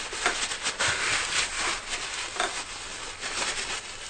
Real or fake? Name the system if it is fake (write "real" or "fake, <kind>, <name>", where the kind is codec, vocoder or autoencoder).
real